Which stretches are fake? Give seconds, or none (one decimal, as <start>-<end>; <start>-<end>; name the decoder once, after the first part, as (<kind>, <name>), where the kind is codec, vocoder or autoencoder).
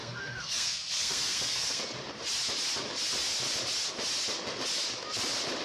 0.0-1.8 (codec, SNAC)